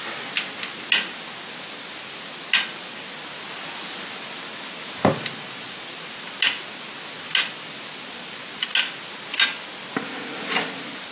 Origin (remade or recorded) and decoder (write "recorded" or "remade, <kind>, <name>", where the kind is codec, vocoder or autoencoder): recorded